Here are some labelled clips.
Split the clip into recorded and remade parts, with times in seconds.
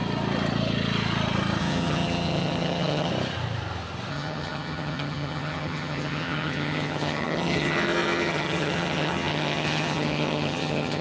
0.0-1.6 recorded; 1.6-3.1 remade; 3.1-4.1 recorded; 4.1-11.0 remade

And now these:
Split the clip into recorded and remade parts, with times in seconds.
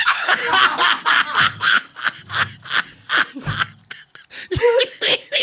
0.0-0.4 remade; 0.4-1.4 recorded; 1.4-1.9 remade; 1.9-4.8 recorded; 4.8-5.4 remade